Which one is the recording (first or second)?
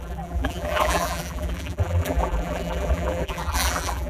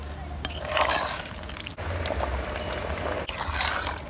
second